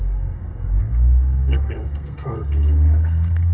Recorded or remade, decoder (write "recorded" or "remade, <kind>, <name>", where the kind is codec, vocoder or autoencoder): remade, codec, SNAC